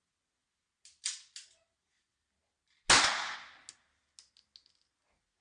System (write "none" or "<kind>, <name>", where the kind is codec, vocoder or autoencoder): none